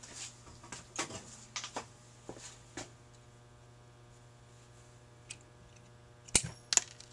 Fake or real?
real